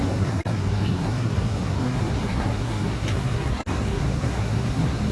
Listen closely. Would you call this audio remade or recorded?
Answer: remade